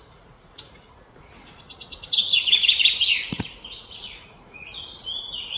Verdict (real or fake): fake